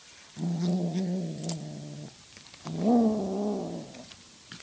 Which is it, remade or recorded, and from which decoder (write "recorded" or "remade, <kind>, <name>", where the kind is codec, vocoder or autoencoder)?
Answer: recorded